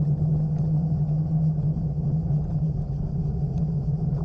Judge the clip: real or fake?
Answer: real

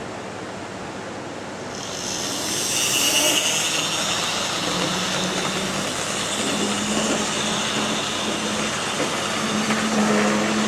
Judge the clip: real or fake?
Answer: real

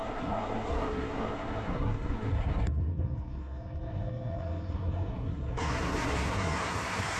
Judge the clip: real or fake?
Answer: fake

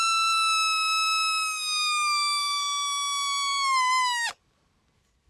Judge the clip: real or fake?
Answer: real